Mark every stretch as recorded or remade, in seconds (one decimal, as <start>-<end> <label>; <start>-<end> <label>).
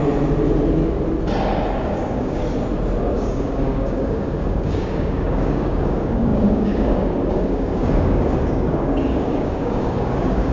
0.0-1.8 recorded; 1.8-2.4 remade; 2.4-3.0 recorded; 3.0-10.5 remade